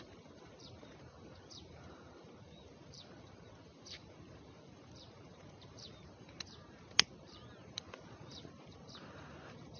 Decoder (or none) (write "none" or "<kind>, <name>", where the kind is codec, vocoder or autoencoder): vocoder, BigVGAN v2